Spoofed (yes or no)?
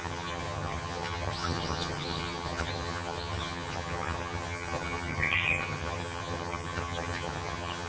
yes